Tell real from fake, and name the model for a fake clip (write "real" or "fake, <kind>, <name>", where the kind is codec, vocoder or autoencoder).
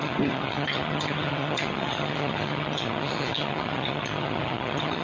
fake, vocoder, HiFi-GAN